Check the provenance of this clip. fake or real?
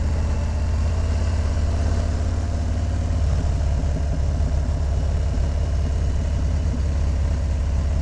real